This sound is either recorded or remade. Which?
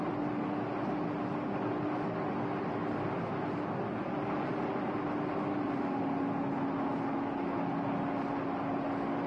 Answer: recorded